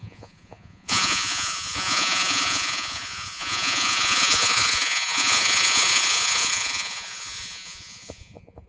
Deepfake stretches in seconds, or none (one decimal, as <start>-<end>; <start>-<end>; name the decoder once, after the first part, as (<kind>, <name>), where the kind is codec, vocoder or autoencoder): 0.0-8.7 (vocoder, Vocos)